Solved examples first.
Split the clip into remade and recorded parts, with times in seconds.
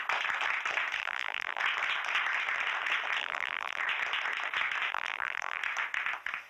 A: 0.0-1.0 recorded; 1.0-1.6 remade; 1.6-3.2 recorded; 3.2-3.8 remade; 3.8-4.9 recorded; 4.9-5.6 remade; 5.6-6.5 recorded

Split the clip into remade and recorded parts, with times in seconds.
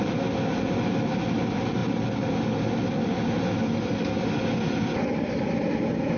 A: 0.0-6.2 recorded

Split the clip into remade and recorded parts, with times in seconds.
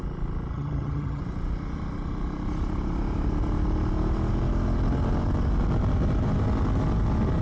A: 0.0-0.5 recorded; 0.5-1.2 remade; 1.2-7.4 recorded